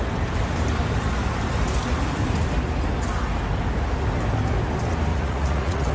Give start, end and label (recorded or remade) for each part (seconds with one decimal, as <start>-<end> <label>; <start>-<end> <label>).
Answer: 0.0-5.1 recorded; 5.1-5.9 remade